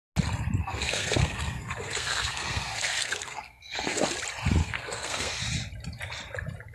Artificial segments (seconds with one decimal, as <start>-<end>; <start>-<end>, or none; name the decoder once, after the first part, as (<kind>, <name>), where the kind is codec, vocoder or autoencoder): 0.6-4.0 (codec, SNAC); 4.6-5.4